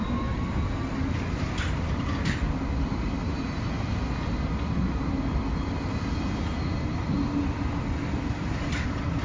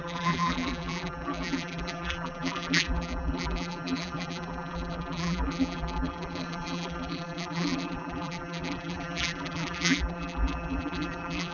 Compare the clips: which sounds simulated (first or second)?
second